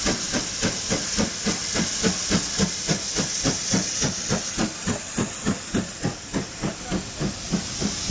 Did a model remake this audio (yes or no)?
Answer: no